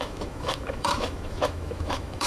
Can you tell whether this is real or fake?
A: fake